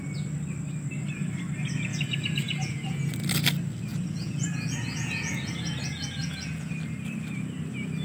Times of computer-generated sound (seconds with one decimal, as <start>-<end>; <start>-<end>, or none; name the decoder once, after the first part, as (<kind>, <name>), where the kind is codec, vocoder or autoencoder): 1.9-3.1 (vocoder, Vocos); 3.9-6.7